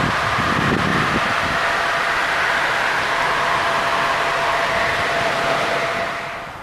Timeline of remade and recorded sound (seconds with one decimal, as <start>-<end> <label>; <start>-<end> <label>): 0.0-0.9 recorded; 0.9-2.8 remade; 2.8-6.6 recorded

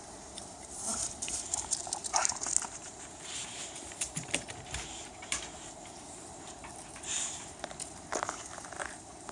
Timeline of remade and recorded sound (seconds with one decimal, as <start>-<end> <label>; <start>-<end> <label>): 0.0-9.3 remade

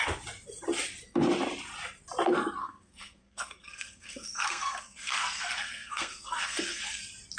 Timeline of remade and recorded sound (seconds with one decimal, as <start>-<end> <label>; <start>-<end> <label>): 0.0-2.6 recorded; 2.6-7.0 remade; 7.0-7.4 recorded

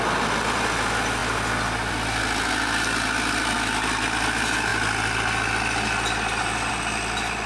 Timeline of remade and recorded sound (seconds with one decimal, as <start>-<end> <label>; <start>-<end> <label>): 0.0-7.5 recorded

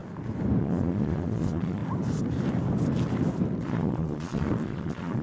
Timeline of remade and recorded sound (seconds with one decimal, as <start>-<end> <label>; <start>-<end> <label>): 0.0-0.6 recorded; 0.6-1.8 remade; 1.8-3.6 recorded; 3.6-5.2 remade

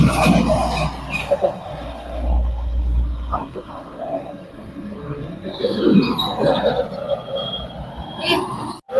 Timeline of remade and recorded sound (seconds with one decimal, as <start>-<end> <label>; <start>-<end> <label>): 0.0-1.2 recorded; 1.2-5.8 remade; 5.8-9.0 recorded